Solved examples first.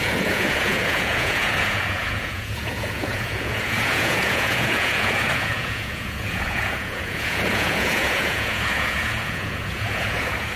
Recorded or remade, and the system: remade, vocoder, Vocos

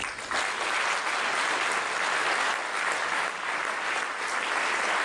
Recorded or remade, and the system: recorded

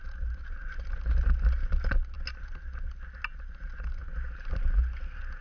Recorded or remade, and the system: recorded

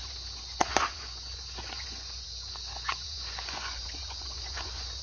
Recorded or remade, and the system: remade, vocoder, Vocos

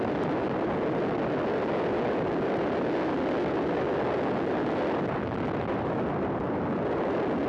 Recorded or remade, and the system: recorded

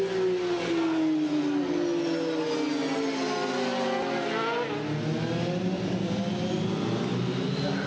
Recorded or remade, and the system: recorded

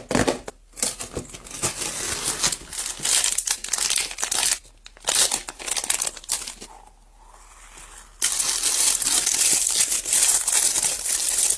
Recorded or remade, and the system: recorded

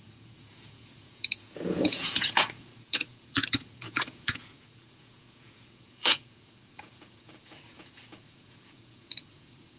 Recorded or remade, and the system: remade, vocoder, Vocos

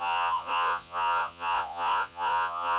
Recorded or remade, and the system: remade, vocoder, Vocos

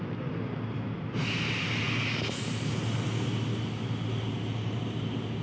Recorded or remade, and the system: recorded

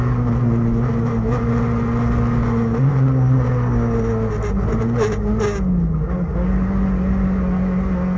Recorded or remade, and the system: recorded